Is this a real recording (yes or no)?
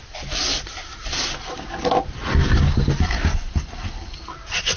yes